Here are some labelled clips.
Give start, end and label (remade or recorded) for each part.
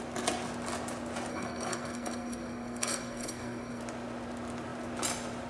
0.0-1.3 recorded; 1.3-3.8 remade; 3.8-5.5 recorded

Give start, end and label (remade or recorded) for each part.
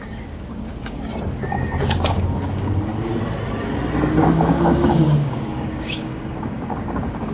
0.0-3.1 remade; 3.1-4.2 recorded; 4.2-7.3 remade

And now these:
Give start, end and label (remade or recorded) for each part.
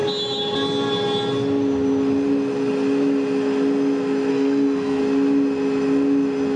0.0-4.3 recorded; 4.3-5.0 remade; 5.0-6.6 recorded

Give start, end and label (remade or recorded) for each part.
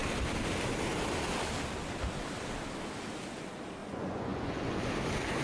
0.0-3.8 recorded; 3.8-4.9 remade; 4.9-5.4 recorded